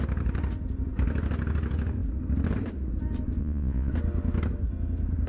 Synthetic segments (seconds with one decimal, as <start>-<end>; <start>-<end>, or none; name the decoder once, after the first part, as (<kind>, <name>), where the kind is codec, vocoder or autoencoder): 3.4-3.9 (vocoder, Vocos)